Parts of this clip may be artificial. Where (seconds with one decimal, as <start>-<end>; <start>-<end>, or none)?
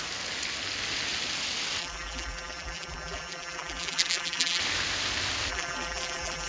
1.8-4.6; 5.5-6.5